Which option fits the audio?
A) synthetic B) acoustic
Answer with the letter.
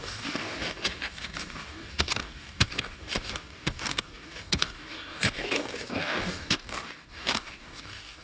A